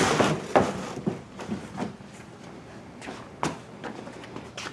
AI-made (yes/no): no